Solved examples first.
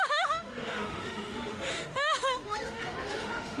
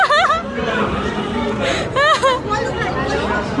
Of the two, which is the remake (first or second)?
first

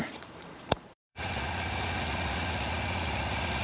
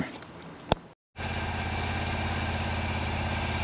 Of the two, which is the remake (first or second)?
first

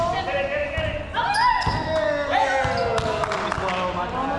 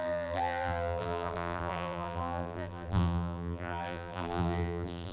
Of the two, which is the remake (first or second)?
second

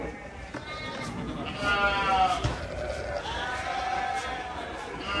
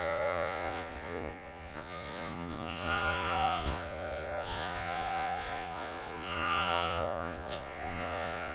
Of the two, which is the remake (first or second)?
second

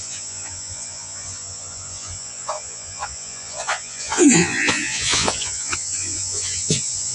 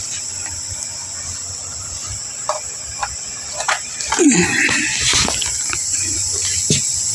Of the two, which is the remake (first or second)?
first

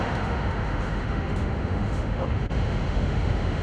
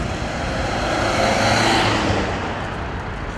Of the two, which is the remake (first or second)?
first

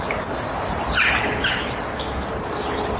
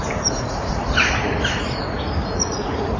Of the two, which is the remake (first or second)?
second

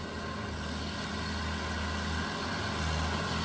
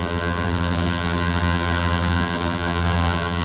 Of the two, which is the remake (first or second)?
second